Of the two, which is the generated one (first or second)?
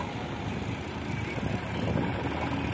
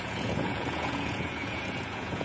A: second